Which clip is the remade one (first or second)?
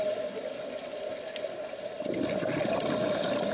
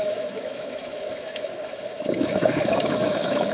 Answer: second